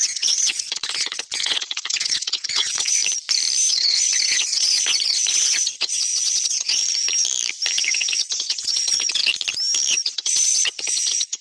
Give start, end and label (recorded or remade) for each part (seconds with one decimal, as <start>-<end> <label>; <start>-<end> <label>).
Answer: 0.0-3.0 remade; 3.0-3.7 recorded; 3.7-6.8 remade; 6.8-7.8 recorded; 7.8-9.2 remade; 9.2-9.9 recorded; 9.9-11.4 remade